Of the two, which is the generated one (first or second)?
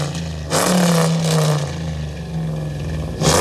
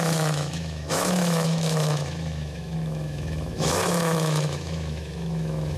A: second